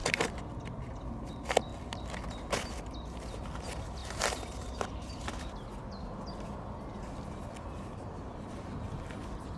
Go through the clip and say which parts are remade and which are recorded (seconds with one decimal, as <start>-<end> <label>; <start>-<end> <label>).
0.0-9.6 recorded